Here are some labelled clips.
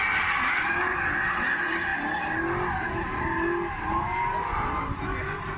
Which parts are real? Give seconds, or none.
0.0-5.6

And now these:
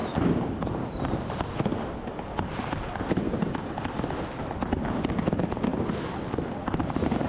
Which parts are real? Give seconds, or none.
1.0-1.7; 5.1-7.3

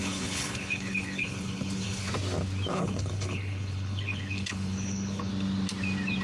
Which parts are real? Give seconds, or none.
2.1-2.7; 5.3-6.2

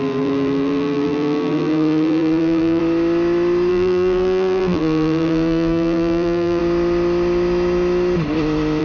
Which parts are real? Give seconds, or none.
2.8-3.7; 6.6-8.8